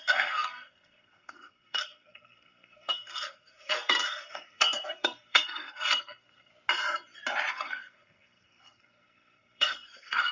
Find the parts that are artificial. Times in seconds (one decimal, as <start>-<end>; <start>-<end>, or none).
0.0-6.5; 7.5-10.3